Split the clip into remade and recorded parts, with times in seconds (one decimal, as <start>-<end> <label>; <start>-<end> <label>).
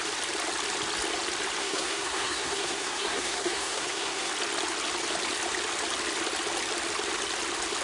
0.0-1.6 recorded; 1.6-4.3 remade; 4.3-7.8 recorded